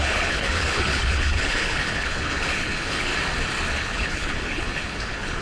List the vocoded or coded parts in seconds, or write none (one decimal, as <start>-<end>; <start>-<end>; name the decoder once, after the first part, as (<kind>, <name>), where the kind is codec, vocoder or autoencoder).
0.0-3.1 (codec, HILCodec); 3.7-5.4